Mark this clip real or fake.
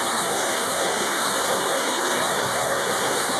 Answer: fake